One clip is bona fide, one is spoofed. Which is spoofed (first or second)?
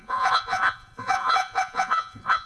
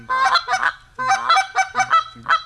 first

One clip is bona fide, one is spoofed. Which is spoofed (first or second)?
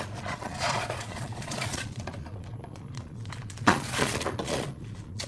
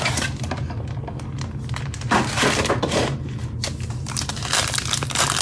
first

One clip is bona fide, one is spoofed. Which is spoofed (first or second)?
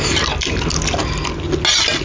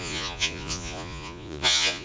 second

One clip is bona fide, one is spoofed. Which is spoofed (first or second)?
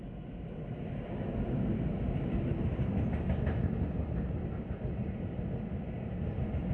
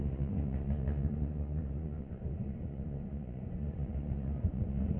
second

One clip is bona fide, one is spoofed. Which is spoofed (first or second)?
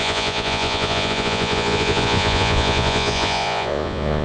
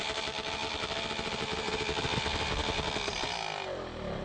first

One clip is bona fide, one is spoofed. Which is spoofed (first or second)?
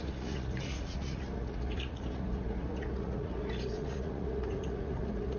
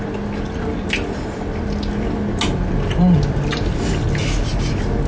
first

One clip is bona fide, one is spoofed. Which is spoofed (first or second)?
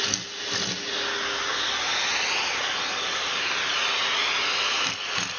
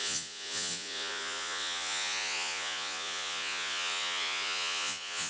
second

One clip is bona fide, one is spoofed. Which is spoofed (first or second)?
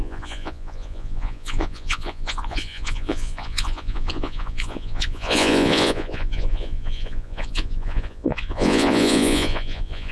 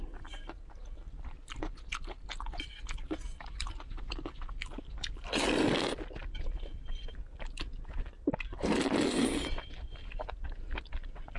first